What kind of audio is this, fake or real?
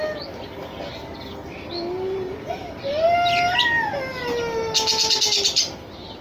real